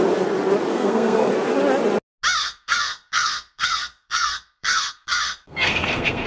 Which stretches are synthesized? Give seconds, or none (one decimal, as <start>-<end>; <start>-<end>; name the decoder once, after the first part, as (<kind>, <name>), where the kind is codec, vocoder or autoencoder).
0.7-1.3 (codec, SNAC); 2.4-6.3